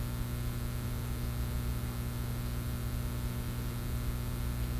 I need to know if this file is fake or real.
real